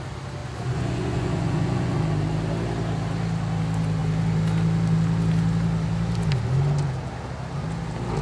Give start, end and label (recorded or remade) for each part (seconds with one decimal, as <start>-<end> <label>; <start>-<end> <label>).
0.0-0.4 recorded; 0.4-2.0 remade; 2.0-8.2 recorded